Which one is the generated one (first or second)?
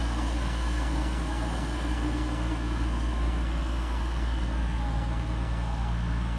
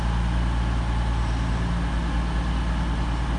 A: first